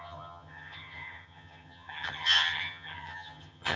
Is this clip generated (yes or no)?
yes